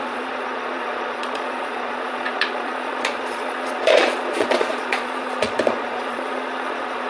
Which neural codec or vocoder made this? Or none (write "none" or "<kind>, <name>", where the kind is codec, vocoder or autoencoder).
vocoder, Vocos